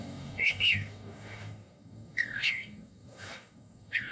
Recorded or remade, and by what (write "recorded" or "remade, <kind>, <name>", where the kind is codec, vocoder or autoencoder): remade, codec, DAC